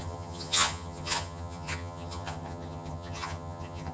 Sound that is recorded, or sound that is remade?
remade